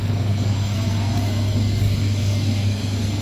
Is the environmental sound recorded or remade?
remade